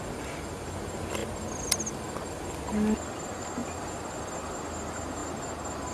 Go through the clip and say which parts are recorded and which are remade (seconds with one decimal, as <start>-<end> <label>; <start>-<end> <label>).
0.0-3.6 recorded; 3.6-4.6 remade; 4.6-5.9 recorded